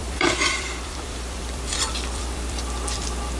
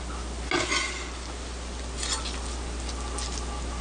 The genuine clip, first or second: second